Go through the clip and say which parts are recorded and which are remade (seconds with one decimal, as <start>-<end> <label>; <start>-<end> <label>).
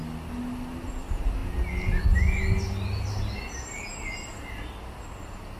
0.0-5.6 recorded